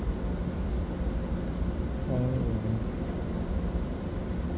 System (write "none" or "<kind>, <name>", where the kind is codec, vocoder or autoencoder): none